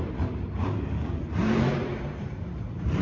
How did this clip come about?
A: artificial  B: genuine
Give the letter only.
A